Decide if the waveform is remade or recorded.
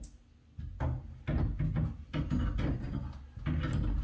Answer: recorded